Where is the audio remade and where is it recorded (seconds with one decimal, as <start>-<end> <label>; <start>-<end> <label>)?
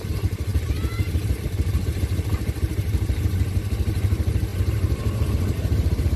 0.0-6.2 remade